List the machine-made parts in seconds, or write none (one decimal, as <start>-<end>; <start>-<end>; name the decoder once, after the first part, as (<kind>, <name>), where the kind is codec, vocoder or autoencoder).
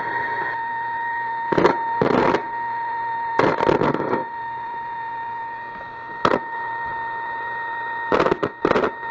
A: 4.2-5.1 (vocoder, BigVGAN v2)